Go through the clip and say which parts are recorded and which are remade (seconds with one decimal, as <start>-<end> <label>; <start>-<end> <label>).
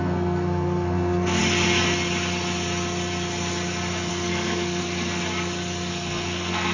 0.0-1.4 remade; 1.4-4.1 recorded; 4.1-4.8 remade; 4.8-5.9 recorded; 5.9-6.7 remade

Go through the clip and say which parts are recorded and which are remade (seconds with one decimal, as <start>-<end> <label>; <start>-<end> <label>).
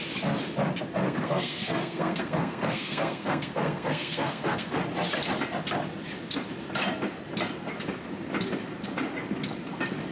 0.0-1.0 recorded; 1.0-4.8 remade; 4.8-10.1 recorded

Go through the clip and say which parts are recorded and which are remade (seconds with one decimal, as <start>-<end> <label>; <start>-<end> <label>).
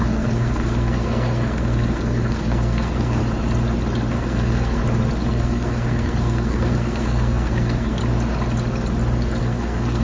0.0-3.2 remade; 3.2-4.1 recorded; 4.1-4.8 remade; 4.8-5.3 recorded; 5.3-8.0 remade; 8.0-9.4 recorded; 9.4-10.0 remade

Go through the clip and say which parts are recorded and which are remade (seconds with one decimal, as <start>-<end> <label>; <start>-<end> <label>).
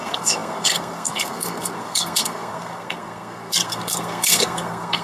0.0-5.0 remade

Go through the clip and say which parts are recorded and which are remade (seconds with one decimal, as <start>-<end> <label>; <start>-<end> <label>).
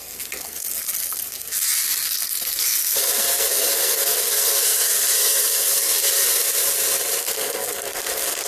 0.0-6.4 remade; 6.4-7.2 recorded; 7.2-8.5 remade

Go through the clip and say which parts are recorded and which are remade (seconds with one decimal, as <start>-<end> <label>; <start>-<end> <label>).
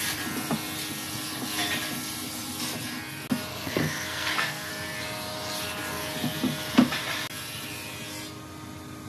0.0-3.5 recorded; 3.5-4.7 remade; 4.7-9.1 recorded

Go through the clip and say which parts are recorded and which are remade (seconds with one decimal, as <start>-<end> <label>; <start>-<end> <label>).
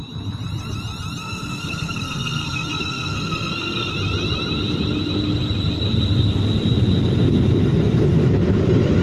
0.0-1.2 recorded; 1.2-3.9 remade; 3.9-9.0 recorded